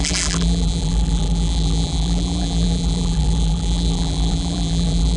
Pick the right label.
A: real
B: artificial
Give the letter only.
B